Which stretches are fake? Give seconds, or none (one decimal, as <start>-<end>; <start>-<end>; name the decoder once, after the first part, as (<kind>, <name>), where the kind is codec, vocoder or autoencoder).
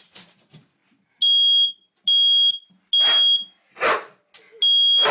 none